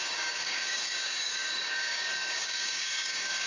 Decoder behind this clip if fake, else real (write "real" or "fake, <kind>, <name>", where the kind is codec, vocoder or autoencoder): fake, codec, DAC